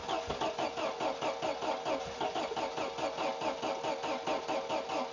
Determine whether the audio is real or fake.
real